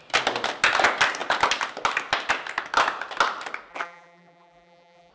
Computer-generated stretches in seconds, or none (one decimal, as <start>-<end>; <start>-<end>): 3.7-5.1